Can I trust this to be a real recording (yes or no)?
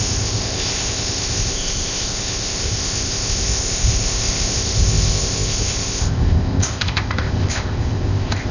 no